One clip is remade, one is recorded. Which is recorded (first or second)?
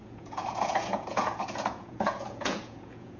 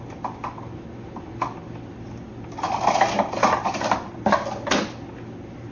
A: second